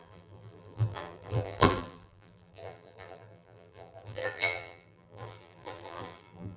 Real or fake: fake